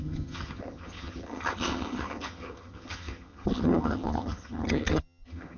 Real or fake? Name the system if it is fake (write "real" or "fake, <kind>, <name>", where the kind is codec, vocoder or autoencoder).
fake, vocoder, HiFi-GAN